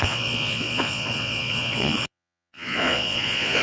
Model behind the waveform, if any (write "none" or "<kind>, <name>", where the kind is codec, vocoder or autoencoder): vocoder, Vocos